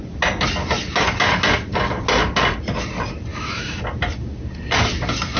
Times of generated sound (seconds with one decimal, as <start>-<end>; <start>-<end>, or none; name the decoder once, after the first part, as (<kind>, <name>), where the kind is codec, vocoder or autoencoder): 3.3-3.8 (autoencoder, DAC-VAE)